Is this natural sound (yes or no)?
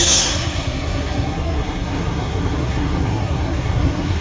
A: no